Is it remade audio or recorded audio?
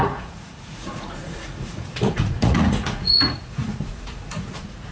remade